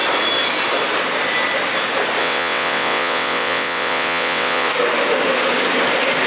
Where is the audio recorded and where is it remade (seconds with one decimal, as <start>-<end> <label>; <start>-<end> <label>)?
0.0-2.2 recorded; 2.2-4.7 remade; 4.7-6.3 recorded